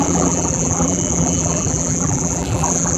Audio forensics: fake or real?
fake